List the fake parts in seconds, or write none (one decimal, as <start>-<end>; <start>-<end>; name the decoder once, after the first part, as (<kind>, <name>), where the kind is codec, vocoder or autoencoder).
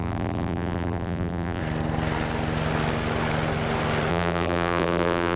0.0-1.6 (vocoder, BigVGAN v2); 4.1-5.4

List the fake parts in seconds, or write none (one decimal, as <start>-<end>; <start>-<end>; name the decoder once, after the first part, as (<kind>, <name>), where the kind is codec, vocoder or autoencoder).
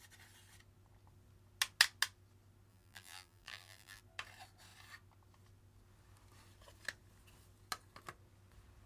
2.7-4.0 (vocoder, BigVGAN v2)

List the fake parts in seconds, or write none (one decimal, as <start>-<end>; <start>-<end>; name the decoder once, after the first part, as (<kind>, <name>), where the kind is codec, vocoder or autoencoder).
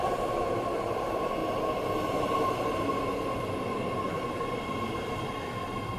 0.0-1.4 (vocoder, BigVGAN v2); 4.1-6.0